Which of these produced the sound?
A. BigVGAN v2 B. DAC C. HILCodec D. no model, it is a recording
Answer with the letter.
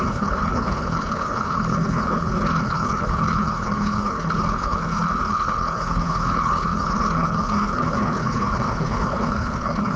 C